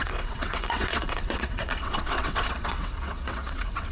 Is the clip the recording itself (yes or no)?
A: no